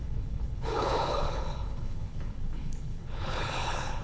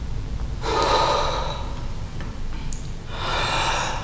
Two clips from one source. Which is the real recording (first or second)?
second